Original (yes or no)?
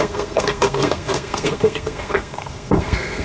no